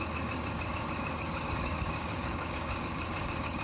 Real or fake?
fake